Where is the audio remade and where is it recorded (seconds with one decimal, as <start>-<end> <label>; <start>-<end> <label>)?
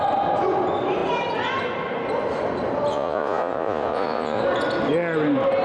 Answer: 0.0-2.9 recorded; 2.9-4.4 remade; 4.4-5.6 recorded